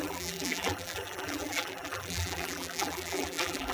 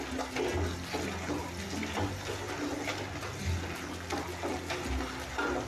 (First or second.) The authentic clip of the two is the second